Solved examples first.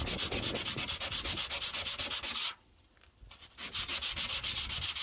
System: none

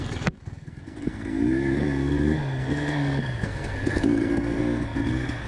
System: codec, SNAC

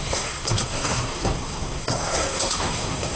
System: codec, SNAC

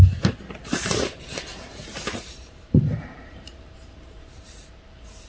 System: vocoder, BigVGAN v2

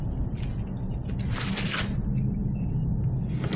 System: none